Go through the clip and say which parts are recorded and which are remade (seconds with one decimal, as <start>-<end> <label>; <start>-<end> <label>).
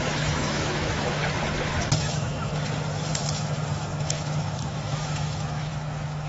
0.0-1.2 remade; 1.2-2.0 recorded; 2.0-2.5 remade; 2.5-3.1 recorded; 3.1-6.3 remade